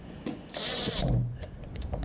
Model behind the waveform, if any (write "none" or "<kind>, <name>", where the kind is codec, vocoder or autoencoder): vocoder, Vocos